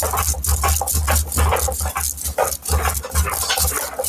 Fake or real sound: real